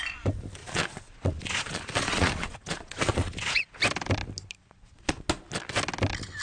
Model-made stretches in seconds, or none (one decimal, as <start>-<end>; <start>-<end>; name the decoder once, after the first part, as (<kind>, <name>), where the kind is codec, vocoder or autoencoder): 0.6-3.8 (vocoder, Vocos); 4.6-5.2